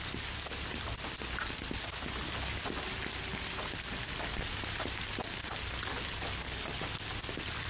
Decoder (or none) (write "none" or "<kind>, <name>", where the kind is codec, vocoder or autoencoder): none